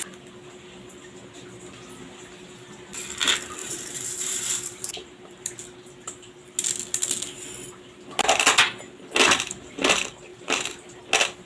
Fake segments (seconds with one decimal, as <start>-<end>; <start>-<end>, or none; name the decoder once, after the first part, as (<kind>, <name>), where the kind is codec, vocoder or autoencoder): 3.6-5.6 (vocoder, BigVGAN v2); 10.3-11.0

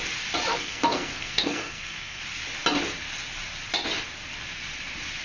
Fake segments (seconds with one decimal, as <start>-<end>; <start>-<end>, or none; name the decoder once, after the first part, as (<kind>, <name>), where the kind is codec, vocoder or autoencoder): 0.5-2.2 (codec, SNAC)

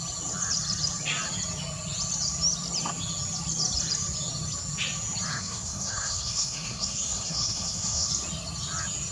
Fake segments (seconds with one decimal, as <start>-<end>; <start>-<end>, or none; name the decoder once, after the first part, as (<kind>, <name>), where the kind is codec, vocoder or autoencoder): 5.3-8.1 (codec, SNAC)

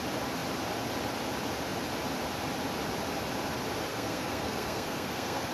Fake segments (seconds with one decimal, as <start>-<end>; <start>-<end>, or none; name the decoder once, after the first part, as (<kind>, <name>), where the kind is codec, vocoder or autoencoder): 3.9-5.5 (codec, SNAC)

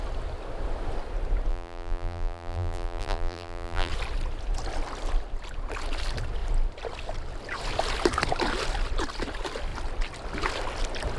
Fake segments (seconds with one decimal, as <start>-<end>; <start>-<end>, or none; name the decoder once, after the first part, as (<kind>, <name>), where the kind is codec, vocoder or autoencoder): 1.5-3.9 (vocoder, BigVGAN v2)

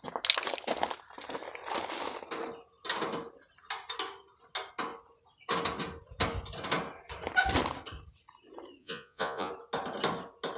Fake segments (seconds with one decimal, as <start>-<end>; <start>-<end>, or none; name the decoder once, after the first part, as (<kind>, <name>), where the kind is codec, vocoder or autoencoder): 8.8-9.5 (vocoder, Vocos)

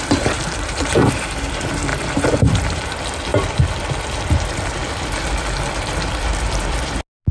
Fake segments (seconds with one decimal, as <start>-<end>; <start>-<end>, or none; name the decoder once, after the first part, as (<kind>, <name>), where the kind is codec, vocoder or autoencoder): 1.9-2.8 (vocoder, BigVGAN v2)